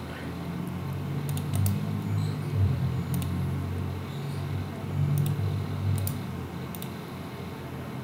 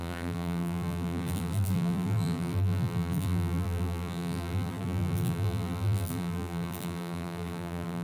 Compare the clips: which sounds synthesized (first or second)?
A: second